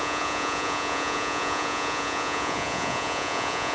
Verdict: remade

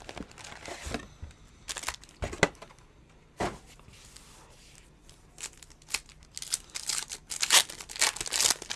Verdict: recorded